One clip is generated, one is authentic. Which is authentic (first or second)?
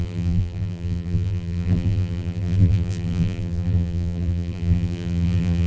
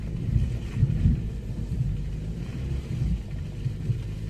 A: second